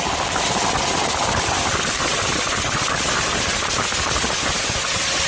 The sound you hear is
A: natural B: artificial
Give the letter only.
A